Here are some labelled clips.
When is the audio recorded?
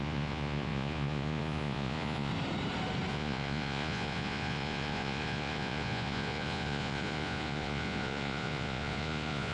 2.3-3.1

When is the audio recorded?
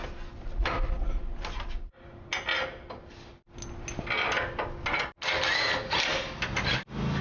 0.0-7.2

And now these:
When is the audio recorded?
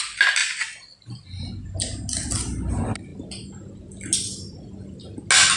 0.0-5.6